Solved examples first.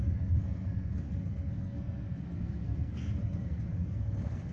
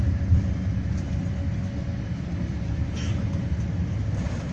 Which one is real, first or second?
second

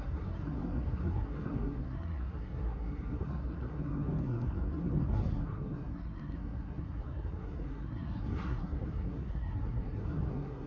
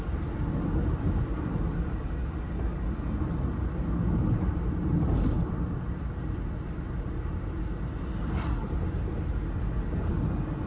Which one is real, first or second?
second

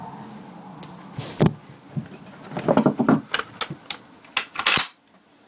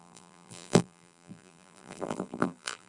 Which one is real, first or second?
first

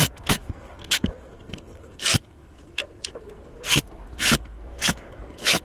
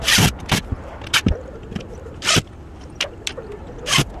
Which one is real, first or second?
second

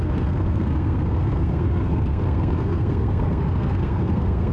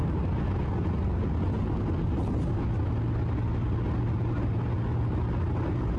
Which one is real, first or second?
second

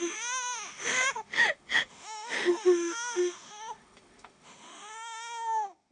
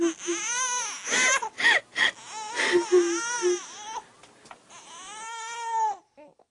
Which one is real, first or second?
second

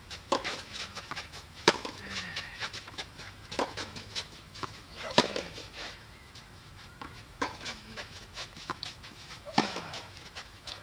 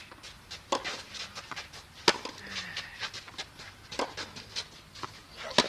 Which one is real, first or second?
second